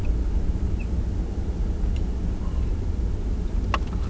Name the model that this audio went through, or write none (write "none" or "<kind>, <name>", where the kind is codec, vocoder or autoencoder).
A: none